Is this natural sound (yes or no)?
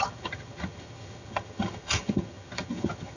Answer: no